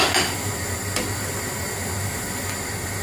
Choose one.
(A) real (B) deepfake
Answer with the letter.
A